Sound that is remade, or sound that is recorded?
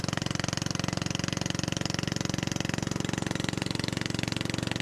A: recorded